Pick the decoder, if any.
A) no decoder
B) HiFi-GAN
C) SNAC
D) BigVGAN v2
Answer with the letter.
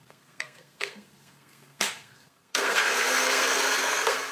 C